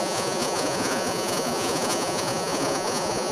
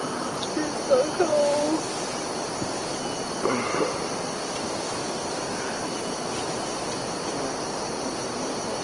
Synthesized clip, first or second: first